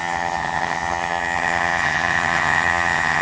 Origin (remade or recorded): remade